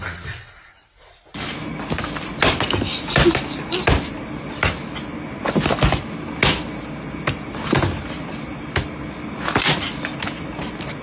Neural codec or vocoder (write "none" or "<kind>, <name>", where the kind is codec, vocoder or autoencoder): none